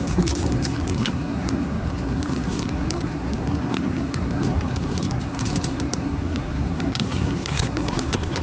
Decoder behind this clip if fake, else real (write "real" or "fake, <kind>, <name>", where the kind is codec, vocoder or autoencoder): fake, codec, SNAC